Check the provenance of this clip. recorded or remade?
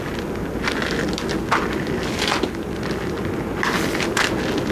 recorded